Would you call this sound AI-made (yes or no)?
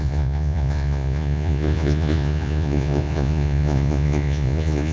yes